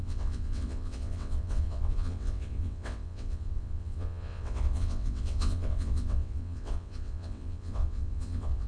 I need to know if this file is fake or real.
fake